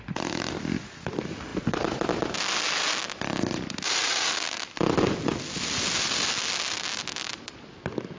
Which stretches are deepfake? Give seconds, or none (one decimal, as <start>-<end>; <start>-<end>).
none